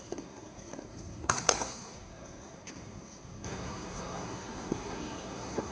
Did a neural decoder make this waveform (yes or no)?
yes